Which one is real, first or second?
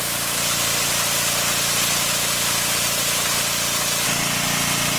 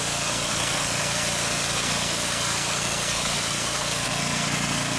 first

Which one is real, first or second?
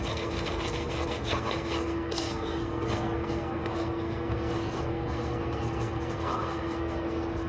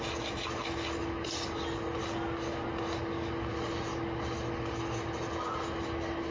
second